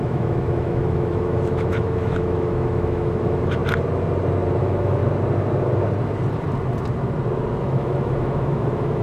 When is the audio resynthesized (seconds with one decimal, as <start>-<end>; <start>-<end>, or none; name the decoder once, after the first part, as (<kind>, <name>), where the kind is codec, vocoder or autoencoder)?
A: 0.0-3.6 (autoencoder, DAC-VAE); 4.6-5.0; 7.6-9.0